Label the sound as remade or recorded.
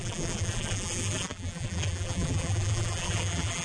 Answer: remade